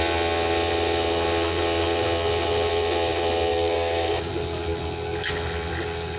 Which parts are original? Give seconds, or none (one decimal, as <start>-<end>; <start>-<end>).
0.0-3.5; 4.3-6.2

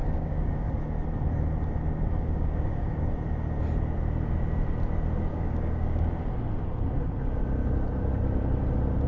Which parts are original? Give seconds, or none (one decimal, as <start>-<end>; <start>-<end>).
0.7-2.1; 3.0-5.3; 6.1-9.1

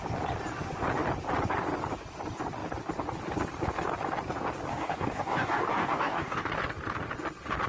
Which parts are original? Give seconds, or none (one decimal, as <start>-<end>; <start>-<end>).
0.0-4.7; 6.5-7.7